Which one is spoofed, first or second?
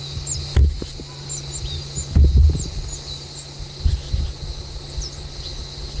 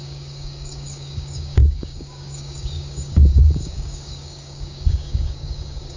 second